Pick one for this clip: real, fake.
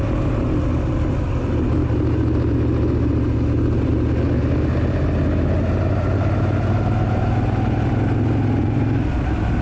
real